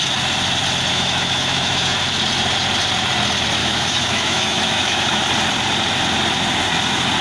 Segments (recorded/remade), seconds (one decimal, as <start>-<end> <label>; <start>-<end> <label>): 0.0-0.9 recorded; 0.9-2.0 remade; 2.0-3.6 recorded; 3.6-5.2 remade; 5.2-7.2 recorded